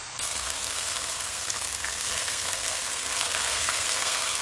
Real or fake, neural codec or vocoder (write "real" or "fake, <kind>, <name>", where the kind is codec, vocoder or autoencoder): fake, codec, SNAC